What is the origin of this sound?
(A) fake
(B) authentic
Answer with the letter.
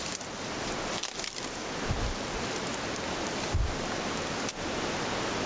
B